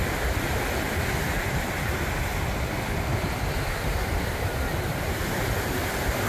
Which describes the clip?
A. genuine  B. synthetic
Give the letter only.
A